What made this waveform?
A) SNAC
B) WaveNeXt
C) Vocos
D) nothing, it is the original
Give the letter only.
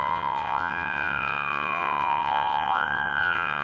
B